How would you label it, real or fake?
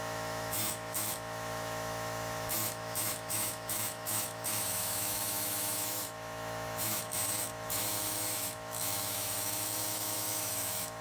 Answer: fake